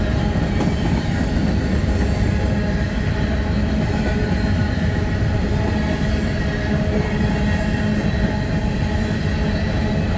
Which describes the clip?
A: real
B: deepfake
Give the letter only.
A